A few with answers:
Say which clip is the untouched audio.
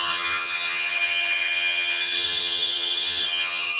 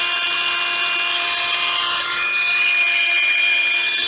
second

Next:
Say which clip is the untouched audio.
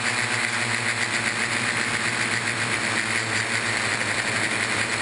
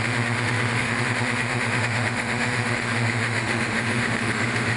first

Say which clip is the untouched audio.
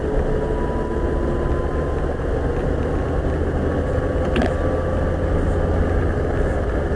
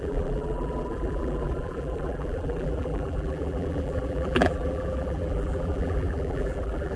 first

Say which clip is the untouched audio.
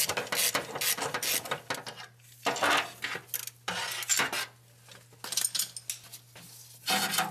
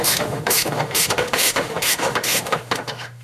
first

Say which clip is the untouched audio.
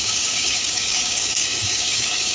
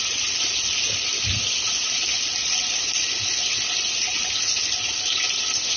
second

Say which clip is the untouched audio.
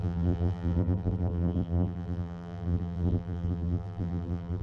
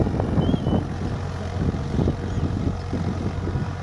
second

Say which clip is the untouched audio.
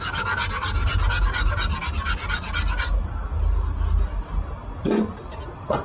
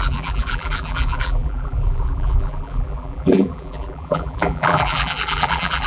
first